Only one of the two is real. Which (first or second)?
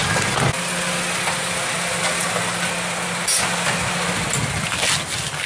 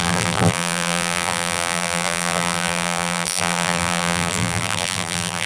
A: first